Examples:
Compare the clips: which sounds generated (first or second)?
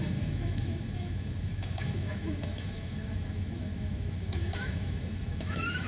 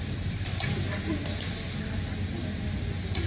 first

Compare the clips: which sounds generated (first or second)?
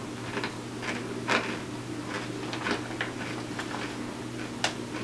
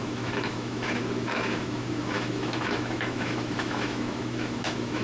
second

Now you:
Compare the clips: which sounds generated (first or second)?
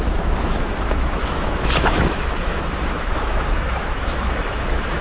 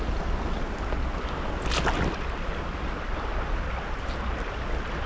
first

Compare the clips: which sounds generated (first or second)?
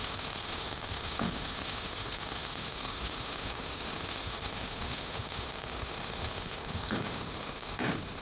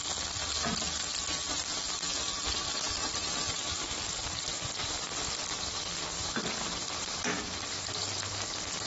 first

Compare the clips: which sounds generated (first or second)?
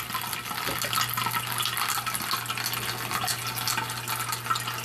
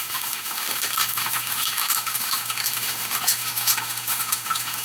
second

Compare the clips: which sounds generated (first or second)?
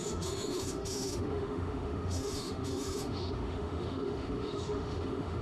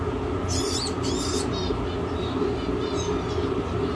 first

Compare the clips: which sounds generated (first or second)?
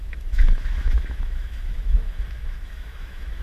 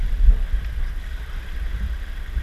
first